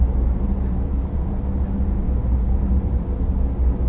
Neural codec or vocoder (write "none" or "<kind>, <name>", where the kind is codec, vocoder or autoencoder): none